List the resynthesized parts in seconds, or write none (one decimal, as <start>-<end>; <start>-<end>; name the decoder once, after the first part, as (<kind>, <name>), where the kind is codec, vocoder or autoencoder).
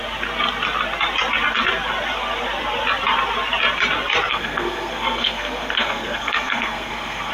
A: 4.3-7.3 (codec, SNAC)